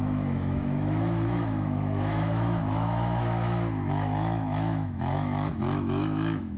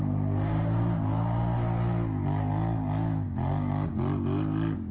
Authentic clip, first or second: second